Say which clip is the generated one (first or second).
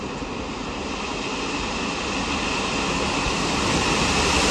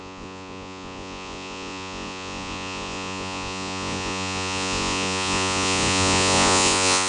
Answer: second